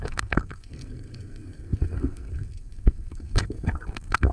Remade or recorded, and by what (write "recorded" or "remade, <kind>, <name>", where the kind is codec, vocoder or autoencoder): remade, codec, SNAC